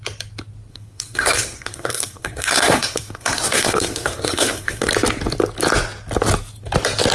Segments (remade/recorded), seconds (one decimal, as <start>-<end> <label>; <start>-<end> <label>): 0.0-0.7 recorded; 0.7-4.9 remade; 4.9-7.1 recorded